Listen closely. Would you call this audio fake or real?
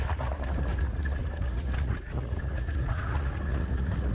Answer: fake